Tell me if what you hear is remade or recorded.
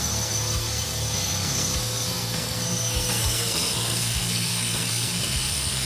remade